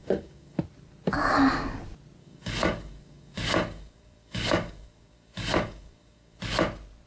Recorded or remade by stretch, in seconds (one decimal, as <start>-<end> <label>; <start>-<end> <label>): 0.0-0.6 remade; 0.6-2.2 recorded; 2.2-6.4 remade; 6.4-7.1 recorded